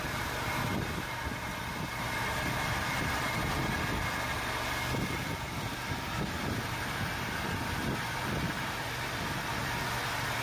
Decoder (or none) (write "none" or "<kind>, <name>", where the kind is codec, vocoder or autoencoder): vocoder, BigVGAN v2